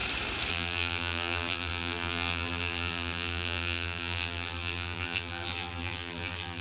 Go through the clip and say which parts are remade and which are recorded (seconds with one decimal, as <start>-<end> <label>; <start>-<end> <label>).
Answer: 0.0-0.5 recorded; 0.5-6.6 remade